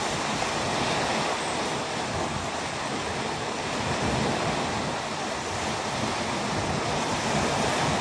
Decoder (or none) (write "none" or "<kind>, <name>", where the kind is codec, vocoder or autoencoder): none